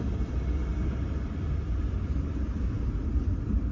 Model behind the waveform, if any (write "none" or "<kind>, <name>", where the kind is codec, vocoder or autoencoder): vocoder, BigVGAN v2